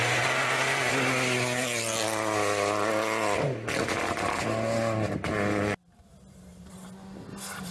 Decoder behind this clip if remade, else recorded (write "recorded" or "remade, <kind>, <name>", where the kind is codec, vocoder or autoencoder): recorded